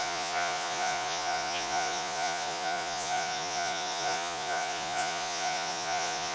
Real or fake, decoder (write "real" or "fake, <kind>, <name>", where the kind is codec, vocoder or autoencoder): fake, vocoder, Vocos